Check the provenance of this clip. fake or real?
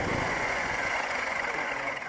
fake